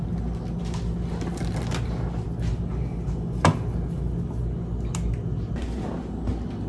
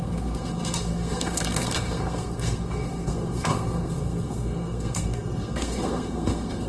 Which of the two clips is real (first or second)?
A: first